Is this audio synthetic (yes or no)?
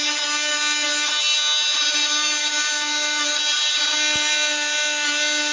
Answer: no